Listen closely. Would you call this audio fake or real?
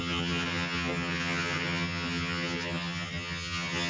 fake